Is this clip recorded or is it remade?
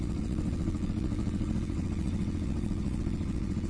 remade